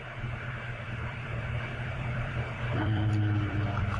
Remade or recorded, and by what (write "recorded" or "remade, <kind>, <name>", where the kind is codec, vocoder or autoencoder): remade, vocoder, BigVGAN v2